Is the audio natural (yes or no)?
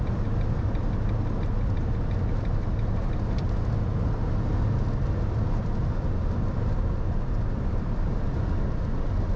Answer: yes